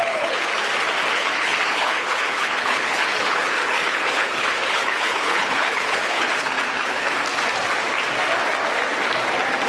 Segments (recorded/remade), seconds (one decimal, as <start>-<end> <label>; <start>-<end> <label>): 0.0-0.5 remade; 0.5-1.1 recorded; 1.1-7.2 remade; 7.2-9.7 recorded